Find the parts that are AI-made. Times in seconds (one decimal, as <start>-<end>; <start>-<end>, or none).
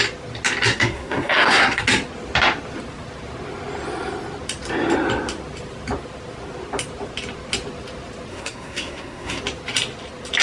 0.7-1.8; 8.3-9.4